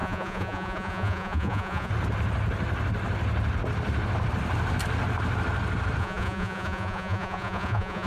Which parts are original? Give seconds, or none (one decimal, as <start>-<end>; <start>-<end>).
1.9-6.0